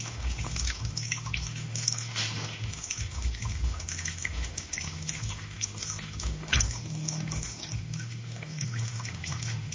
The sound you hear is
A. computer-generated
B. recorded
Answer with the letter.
A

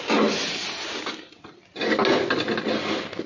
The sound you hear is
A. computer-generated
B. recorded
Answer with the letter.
B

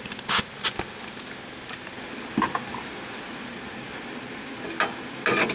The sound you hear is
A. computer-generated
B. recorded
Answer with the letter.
B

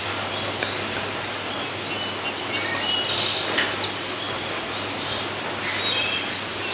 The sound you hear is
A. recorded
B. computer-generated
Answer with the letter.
A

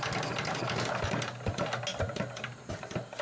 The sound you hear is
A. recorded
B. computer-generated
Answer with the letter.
A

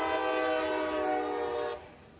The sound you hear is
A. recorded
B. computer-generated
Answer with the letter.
A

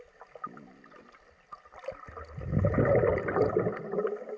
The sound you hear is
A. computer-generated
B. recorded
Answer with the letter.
B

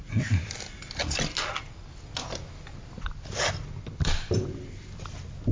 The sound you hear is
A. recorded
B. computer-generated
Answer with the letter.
A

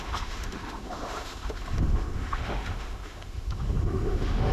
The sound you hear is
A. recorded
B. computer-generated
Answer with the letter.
B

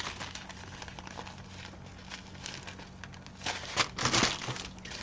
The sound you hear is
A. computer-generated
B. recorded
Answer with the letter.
B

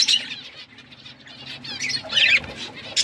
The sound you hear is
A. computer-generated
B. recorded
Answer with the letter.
B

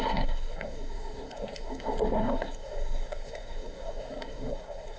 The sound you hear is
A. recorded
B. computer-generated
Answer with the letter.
B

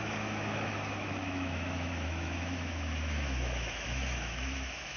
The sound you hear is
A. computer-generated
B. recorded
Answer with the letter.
A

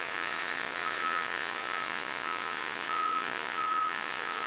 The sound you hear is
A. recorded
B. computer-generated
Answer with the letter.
B